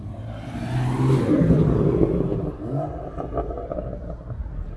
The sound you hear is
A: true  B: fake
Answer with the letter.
A